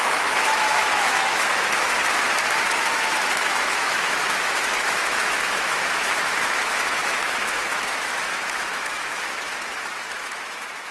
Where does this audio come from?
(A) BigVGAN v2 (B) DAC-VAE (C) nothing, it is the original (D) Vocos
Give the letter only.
B